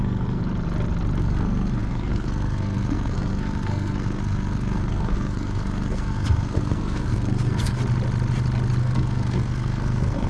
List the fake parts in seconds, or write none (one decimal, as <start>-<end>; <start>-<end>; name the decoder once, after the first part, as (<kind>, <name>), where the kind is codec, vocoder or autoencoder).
0.0-0.4 (codec, SNAC); 1.2-7.8; 8.8-10.3